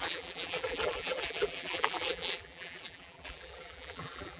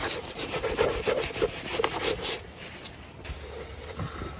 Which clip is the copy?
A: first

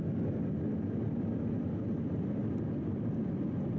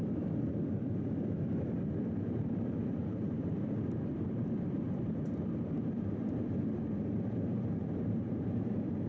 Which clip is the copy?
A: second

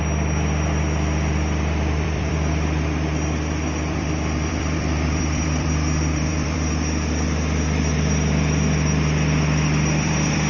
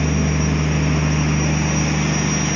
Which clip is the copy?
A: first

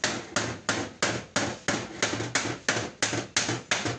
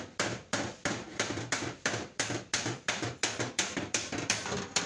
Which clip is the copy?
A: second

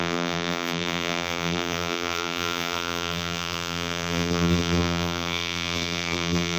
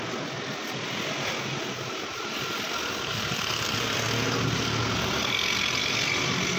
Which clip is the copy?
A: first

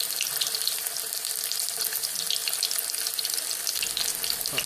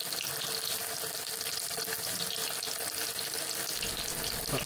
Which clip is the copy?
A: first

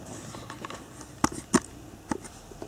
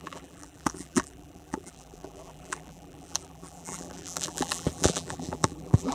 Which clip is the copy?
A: second